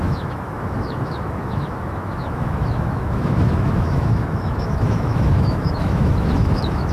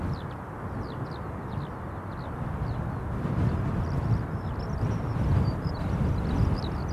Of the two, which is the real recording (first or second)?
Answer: second